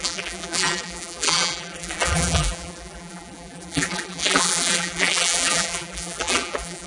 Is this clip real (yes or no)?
no